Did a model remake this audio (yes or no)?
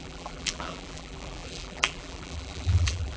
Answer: yes